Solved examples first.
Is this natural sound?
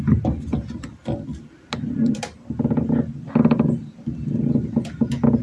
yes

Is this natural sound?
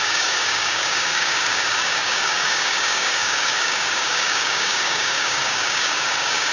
no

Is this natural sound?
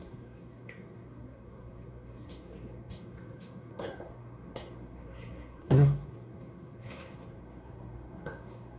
no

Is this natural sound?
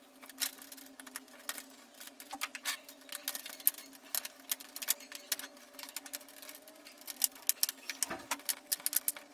yes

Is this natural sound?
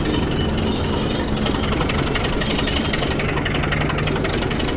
yes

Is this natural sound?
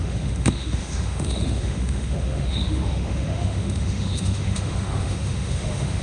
no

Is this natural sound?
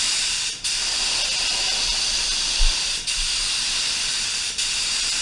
yes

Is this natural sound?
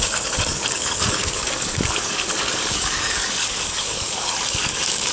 no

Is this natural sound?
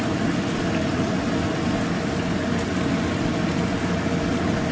yes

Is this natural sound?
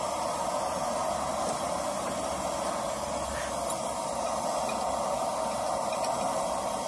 yes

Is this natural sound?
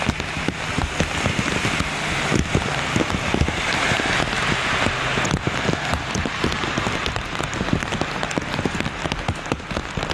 yes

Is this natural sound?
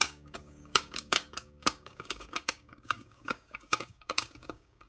no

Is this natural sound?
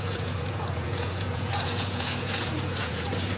no